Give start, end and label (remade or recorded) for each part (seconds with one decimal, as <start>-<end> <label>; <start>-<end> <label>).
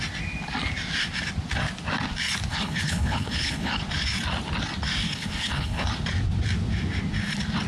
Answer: 0.0-2.5 recorded; 2.5-3.7 remade; 3.7-5.0 recorded; 5.0-5.9 remade; 5.9-7.7 recorded